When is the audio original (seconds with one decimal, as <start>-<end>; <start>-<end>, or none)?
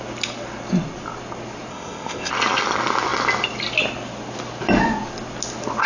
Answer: 0.0-1.7; 2.3-5.9